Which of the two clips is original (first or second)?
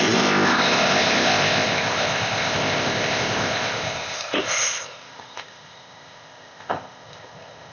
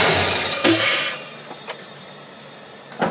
second